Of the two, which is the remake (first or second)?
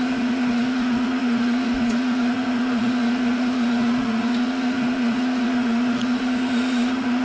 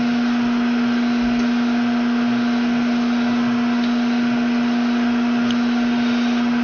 first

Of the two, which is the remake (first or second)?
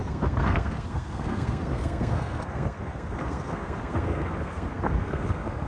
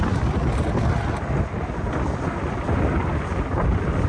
first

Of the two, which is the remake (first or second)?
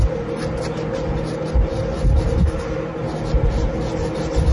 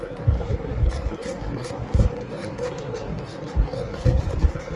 second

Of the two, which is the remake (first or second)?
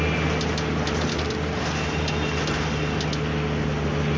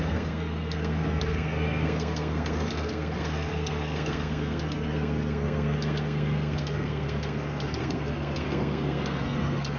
second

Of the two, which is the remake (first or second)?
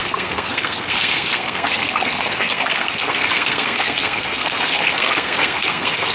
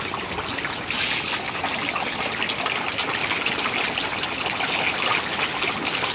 first